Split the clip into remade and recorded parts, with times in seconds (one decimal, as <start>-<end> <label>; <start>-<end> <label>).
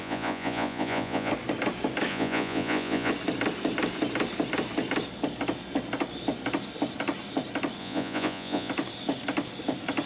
0.0-1.3 remade; 1.3-2.1 recorded; 2.1-3.1 remade; 3.1-7.8 recorded; 7.8-8.7 remade; 8.7-10.1 recorded